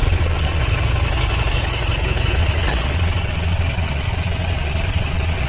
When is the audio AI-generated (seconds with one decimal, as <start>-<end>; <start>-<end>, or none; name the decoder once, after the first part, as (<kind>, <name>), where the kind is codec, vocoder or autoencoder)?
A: 0.0-0.6 (vocoder, Vocos); 2.4-5.5